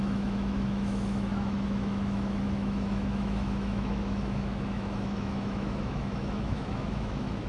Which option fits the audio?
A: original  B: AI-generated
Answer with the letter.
B